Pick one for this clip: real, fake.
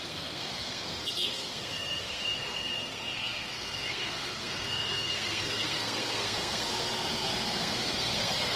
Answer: fake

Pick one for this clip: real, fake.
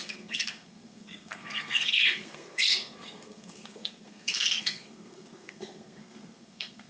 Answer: fake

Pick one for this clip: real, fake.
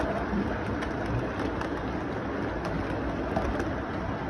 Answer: real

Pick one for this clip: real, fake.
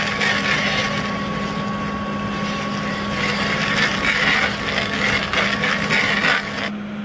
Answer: real